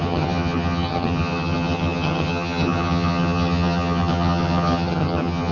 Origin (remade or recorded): remade